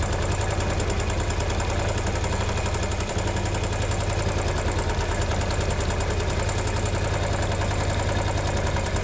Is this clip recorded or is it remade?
recorded